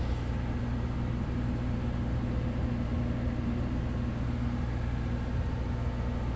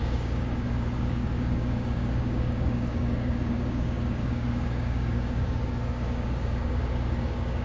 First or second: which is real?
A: first